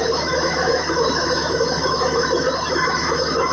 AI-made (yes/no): yes